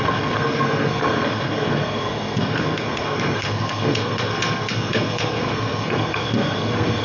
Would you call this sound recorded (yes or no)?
no